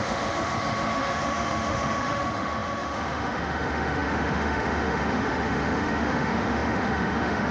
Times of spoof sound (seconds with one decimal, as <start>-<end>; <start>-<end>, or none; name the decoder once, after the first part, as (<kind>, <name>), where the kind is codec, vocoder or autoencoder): 0.0-7.5 (autoencoder, DAC-VAE)